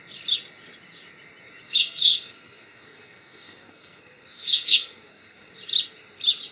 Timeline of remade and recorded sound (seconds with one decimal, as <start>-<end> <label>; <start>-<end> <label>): 0.0-1.6 recorded; 1.6-5.5 remade; 5.5-6.5 recorded